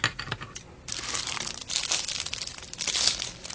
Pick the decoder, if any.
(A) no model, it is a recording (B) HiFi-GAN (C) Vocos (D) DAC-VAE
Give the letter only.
A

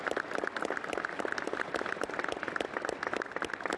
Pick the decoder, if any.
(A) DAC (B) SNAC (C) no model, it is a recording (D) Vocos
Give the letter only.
C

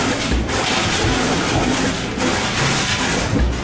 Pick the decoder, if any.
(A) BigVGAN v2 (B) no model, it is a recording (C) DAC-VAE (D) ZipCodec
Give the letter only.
B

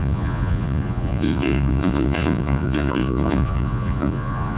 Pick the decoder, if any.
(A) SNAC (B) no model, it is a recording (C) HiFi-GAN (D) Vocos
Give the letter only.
D